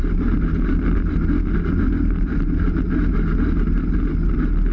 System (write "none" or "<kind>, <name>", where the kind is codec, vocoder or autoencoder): none